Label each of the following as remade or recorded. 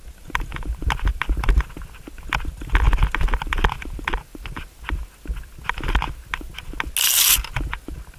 recorded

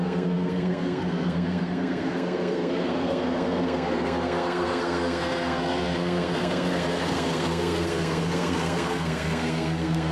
remade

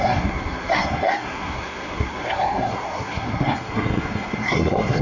remade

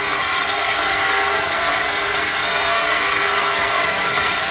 remade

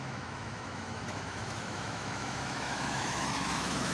remade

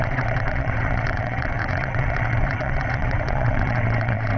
remade